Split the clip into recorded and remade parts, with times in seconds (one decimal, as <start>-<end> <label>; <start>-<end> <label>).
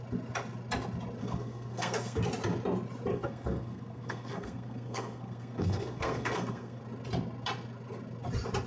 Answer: 0.0-1.2 recorded; 1.2-2.2 remade; 2.2-3.1 recorded; 3.1-6.8 remade; 6.8-8.7 recorded